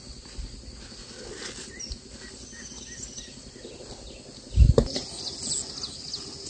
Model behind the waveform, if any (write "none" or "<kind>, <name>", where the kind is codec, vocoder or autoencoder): none